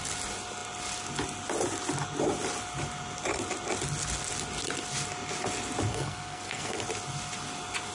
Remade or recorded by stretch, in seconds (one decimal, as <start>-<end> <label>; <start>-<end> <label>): 0.0-5.9 recorded; 5.9-6.8 remade; 6.8-7.9 recorded